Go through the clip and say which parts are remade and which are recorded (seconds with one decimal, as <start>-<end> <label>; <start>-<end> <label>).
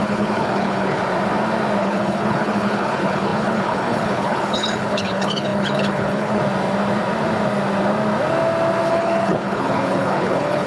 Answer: 0.0-1.0 remade; 1.0-1.8 recorded; 1.8-6.4 remade; 6.4-8.9 recorded; 8.9-10.7 remade